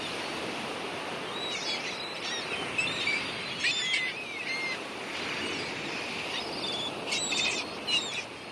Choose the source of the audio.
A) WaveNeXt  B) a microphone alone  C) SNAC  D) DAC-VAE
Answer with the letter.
B